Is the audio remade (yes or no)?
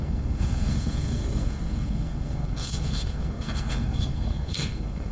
yes